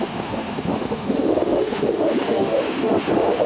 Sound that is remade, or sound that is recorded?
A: remade